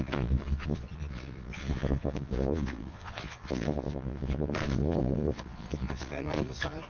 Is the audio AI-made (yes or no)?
yes